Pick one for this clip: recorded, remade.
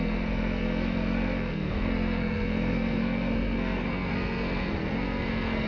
remade